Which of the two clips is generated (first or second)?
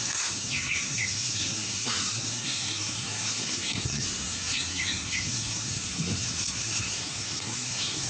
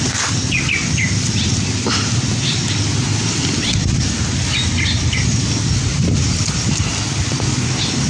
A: first